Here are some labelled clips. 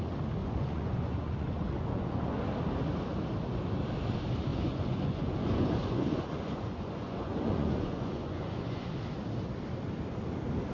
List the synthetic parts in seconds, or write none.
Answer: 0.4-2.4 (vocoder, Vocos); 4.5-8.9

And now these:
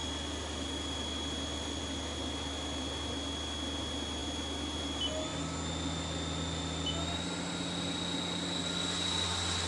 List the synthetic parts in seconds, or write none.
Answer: none

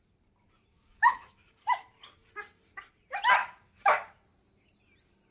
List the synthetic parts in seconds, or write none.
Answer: 0.7-1.5 (autoencoder, DAC-VAE); 3.4-4.2

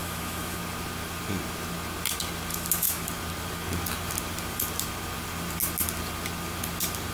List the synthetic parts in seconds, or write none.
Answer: 0.0-0.6 (autoencoder, DAC-VAE); 2.5-3.1

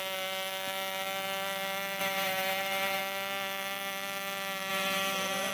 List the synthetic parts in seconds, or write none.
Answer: 2.0-3.0 (vocoder, BigVGAN v2); 4.7-5.5

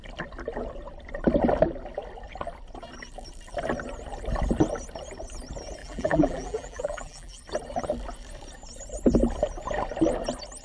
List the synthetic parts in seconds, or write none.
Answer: 5.8-7.4 (vocoder, BigVGAN v2)

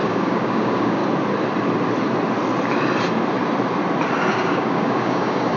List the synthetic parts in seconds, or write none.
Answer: 0.0-1.0 (codec, DAC); 4.3-5.6